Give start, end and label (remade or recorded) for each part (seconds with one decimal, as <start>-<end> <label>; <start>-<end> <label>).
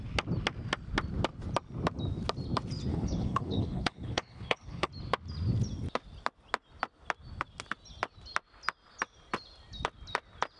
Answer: 0.0-2.9 recorded; 2.9-4.9 remade; 4.9-10.6 recorded